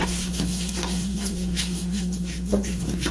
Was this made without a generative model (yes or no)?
no